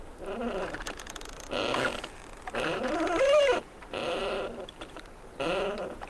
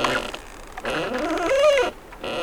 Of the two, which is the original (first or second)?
second